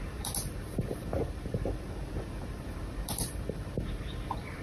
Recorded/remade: remade